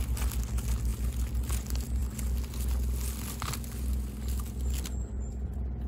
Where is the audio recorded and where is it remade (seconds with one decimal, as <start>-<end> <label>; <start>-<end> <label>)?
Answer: 0.0-5.9 recorded